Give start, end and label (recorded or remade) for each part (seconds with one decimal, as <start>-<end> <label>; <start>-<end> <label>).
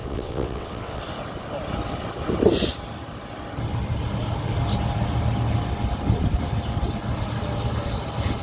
0.0-1.0 remade; 1.0-8.4 recorded